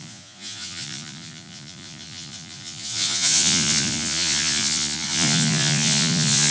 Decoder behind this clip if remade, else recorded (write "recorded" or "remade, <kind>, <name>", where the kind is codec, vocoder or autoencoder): remade, vocoder, Vocos